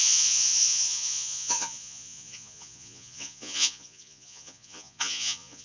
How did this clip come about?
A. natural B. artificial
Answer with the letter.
B